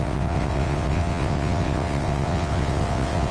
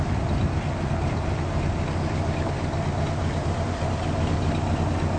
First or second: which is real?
second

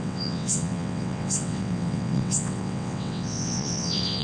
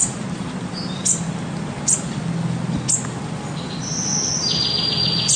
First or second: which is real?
second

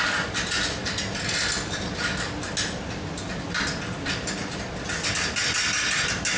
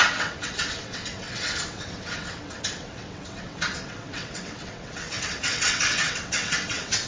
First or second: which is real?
first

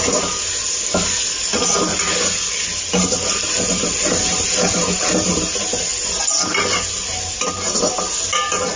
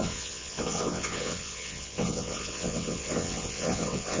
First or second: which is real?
first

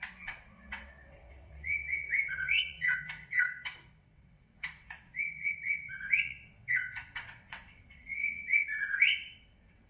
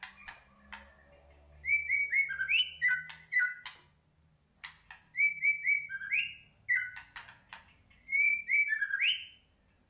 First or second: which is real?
second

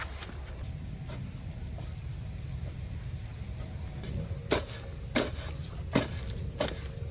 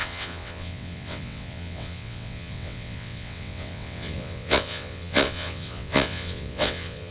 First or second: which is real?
first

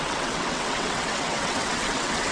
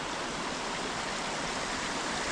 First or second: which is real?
second